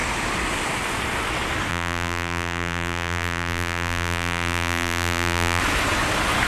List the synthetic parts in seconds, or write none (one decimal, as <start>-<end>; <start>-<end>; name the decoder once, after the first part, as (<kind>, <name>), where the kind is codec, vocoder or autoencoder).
1.7-5.6 (vocoder, BigVGAN v2)